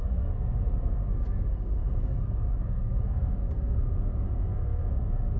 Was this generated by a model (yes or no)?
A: yes